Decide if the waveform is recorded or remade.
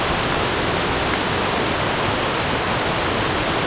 recorded